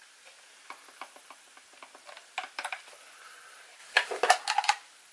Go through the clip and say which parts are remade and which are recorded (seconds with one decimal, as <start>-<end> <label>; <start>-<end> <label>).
0.0-3.8 recorded; 3.8-4.3 remade; 4.3-5.1 recorded

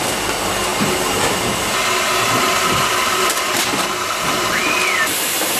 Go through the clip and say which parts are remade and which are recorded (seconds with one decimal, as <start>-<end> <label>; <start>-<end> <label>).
0.0-0.7 recorded; 0.7-1.4 remade; 1.4-2.6 recorded; 2.6-4.6 remade; 4.6-5.6 recorded